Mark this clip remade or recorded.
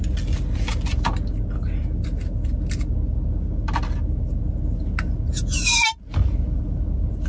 recorded